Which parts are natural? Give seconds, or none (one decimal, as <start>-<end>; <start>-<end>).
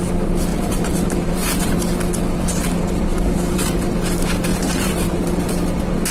0.0-0.5; 1.7-3.1; 3.9-4.5; 5.2-6.1